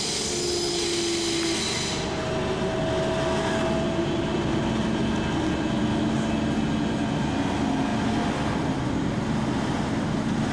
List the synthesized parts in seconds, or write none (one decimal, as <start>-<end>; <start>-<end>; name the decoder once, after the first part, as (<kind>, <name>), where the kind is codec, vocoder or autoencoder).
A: none

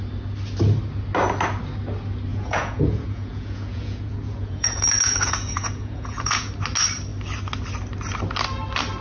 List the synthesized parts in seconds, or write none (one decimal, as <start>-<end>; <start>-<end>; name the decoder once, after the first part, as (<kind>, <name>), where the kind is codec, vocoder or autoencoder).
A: 2.3-6.5 (vocoder, Vocos)

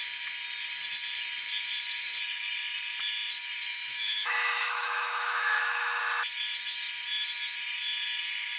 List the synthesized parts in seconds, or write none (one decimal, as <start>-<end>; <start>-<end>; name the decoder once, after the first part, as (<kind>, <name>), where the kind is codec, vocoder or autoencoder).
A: 3.7-6.0 (autoencoder, DAC-VAE)

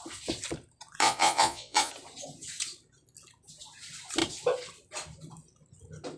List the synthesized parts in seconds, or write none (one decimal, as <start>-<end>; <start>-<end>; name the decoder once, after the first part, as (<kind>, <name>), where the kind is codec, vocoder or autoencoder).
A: 1.0-1.9 (vocoder, Vocos)

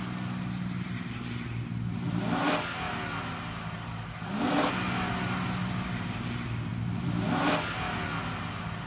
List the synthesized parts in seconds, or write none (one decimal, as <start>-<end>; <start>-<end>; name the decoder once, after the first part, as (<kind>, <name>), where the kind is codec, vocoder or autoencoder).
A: none